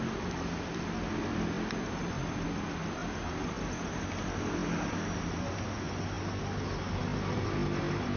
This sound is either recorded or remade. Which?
recorded